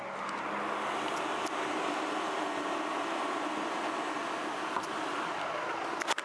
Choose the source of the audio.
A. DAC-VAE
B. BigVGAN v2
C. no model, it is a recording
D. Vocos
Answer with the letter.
C